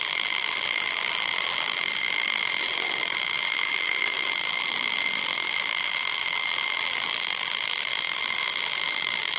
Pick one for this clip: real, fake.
fake